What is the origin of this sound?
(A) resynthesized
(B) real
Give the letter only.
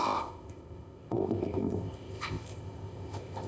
A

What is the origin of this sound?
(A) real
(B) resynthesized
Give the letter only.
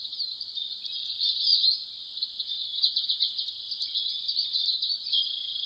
A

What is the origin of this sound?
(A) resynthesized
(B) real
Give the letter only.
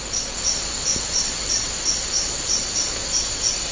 B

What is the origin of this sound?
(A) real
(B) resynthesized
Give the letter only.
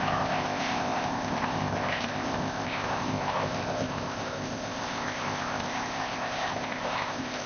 B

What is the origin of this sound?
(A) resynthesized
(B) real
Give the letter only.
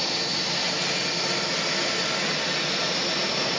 B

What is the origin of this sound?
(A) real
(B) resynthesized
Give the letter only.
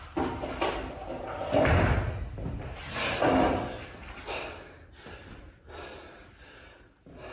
A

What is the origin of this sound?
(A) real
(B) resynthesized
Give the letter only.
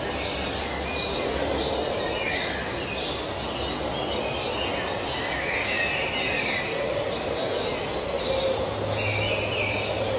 A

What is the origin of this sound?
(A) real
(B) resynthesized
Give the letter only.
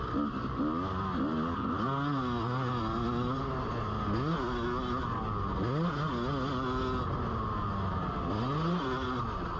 A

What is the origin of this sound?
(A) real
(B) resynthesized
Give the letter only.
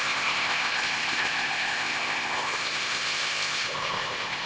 B